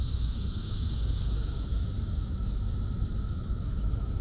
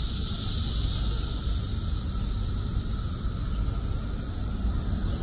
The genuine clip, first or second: second